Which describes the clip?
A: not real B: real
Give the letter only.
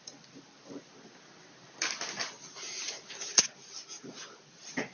B